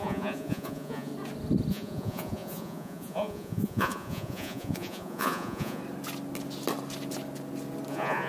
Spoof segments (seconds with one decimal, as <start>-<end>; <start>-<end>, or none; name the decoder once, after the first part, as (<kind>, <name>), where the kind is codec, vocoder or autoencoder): 0.0-1.1 (vocoder, Vocos); 1.7-5.8; 7.9-8.3